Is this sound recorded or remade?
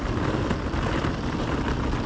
recorded